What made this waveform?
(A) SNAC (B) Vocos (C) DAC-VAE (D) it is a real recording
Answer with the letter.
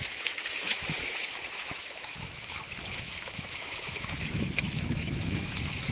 C